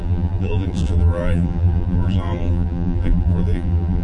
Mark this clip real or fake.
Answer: fake